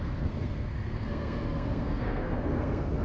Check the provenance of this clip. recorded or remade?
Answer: remade